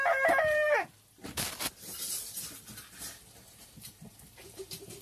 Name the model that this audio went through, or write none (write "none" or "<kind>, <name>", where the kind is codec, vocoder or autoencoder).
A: vocoder, BigVGAN v2